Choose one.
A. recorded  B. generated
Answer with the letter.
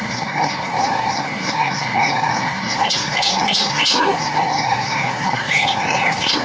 B